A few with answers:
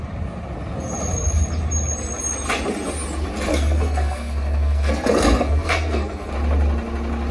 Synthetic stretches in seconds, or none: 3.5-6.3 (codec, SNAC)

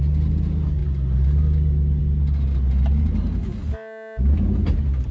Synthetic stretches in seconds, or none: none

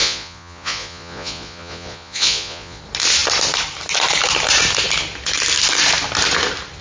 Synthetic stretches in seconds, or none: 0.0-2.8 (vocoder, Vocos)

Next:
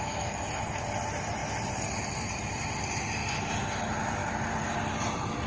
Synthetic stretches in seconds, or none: 1.4-2.7 (vocoder, BigVGAN v2); 3.2-3.8